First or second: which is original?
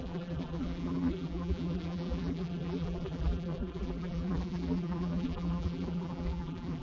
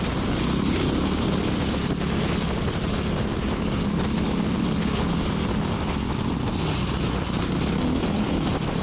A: second